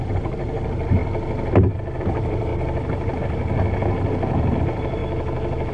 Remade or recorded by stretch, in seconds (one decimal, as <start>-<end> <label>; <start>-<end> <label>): 0.0-1.0 remade; 1.0-2.0 recorded; 2.0-2.5 remade; 2.5-4.6 recorded; 4.6-5.0 remade; 5.0-5.7 recorded